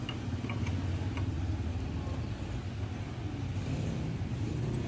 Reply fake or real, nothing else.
real